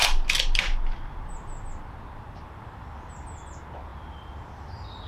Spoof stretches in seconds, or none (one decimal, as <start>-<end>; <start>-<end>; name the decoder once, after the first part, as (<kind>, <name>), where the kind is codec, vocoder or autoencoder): 0.0-3.1 (vocoder, BigVGAN v2); 3.9-5.1

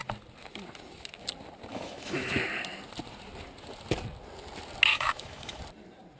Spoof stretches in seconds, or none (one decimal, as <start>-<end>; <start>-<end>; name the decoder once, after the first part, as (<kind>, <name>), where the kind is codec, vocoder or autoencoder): 1.7-2.3 (autoencoder, DAC-VAE); 4.9-5.6

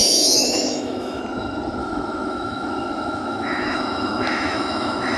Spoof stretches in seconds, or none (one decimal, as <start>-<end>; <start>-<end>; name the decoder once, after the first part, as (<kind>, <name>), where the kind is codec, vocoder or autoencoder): 0.0-1.2 (autoencoder, DAC-VAE); 1.8-5.2

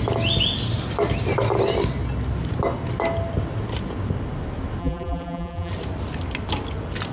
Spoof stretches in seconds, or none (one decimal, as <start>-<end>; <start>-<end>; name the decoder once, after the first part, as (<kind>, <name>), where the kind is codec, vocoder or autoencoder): 4.8-5.7 (vocoder, BigVGAN v2)

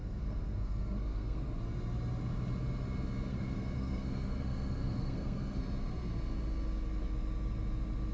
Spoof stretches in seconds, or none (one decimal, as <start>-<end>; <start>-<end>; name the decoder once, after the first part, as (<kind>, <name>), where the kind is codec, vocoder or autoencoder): 0.0-1.6 (codec, SNAC); 3.3-5.6

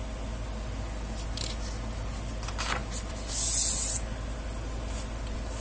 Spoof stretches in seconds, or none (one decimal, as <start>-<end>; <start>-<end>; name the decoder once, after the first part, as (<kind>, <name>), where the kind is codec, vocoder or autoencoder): none

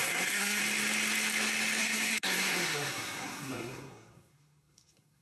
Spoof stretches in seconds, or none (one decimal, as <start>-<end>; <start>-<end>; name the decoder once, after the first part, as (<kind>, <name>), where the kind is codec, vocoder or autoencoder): 0.0-0.6 (codec, SNAC); 1.8-5.2

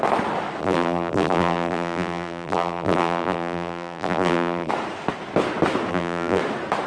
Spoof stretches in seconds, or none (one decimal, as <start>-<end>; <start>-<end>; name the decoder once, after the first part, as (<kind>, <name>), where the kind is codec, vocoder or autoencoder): 0.6-4.7 (vocoder, BigVGAN v2); 5.9-6.4